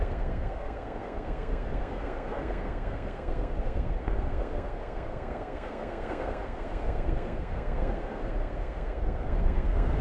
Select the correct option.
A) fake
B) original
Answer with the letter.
A